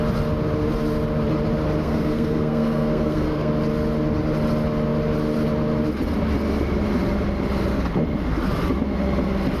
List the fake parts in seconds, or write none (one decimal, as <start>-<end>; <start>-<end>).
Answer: 1.8-3.5